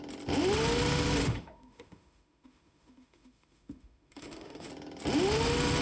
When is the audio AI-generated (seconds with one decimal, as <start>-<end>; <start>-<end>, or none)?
1.2-4.7